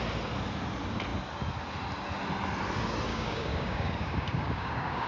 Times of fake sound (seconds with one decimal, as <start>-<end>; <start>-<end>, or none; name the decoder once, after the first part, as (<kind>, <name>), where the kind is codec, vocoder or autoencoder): 3.1-5.1 (codec, DAC)